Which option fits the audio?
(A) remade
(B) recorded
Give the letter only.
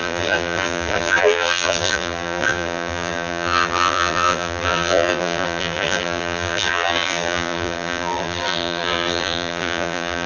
A